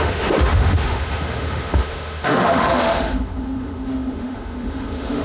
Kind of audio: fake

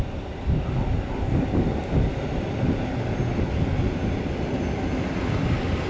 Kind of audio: real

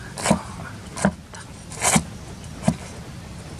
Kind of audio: real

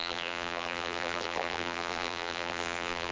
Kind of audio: fake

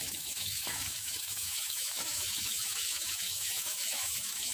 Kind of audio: fake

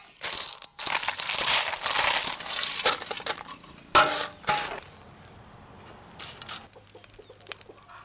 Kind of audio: real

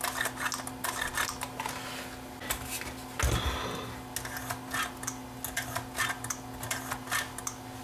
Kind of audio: real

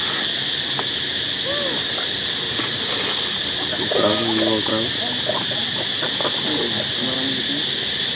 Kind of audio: real